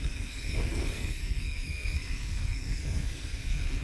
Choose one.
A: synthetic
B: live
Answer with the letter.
A